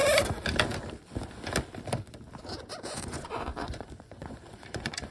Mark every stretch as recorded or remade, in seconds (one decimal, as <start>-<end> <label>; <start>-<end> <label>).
0.0-2.4 recorded; 2.4-5.1 remade